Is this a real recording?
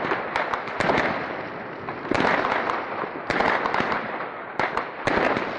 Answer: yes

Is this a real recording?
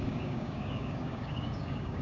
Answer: no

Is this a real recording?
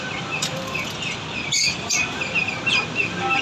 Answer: no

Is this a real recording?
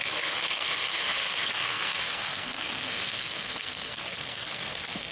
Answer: no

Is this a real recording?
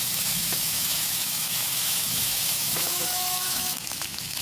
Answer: no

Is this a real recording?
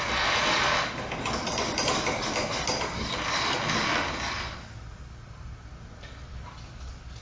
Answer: yes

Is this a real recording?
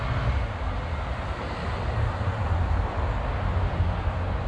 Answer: yes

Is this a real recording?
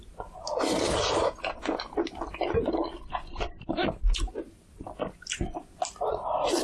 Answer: yes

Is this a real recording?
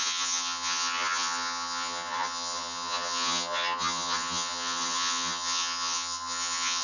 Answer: no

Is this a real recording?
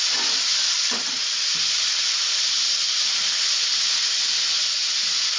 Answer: yes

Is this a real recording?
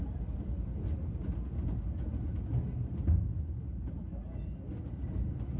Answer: yes